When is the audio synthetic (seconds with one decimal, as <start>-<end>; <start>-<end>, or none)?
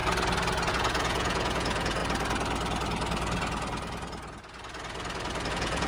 0.7-2.0; 5.5-5.9